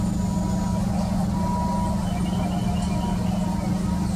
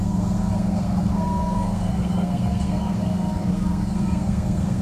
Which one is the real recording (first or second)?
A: first